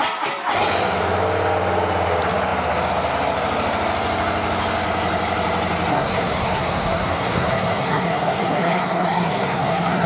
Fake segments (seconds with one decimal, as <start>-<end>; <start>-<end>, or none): 5.9-10.1